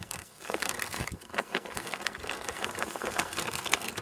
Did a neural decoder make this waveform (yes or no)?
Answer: yes